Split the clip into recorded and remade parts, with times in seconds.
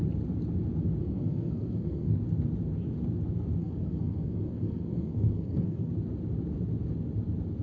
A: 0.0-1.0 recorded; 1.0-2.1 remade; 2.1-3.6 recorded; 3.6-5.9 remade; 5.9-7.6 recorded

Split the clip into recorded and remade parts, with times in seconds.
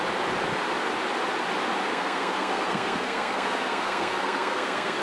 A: 0.0-1.9 recorded; 1.9-5.0 remade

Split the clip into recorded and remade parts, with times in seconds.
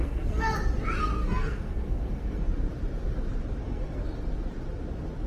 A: 0.0-0.5 remade; 0.5-1.0 recorded; 1.0-2.4 remade; 2.4-3.6 recorded; 3.6-4.0 remade; 4.0-5.3 recorded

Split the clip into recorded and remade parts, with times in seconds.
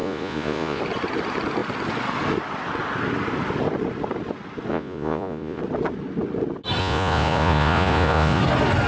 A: 0.0-0.8 remade; 0.8-4.7 recorded; 4.7-5.6 remade; 5.6-6.8 recorded; 6.8-8.4 remade; 8.4-8.9 recorded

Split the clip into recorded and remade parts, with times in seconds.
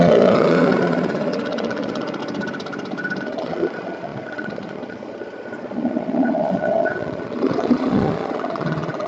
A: 0.0-2.2 remade; 2.2-3.2 recorded; 3.2-9.1 remade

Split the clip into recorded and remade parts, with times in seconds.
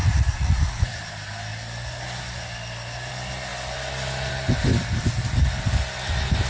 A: 0.0-1.0 remade; 1.0-6.5 recorded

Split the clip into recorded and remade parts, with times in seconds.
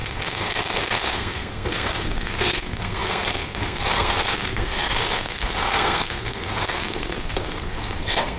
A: 0.0-8.4 remade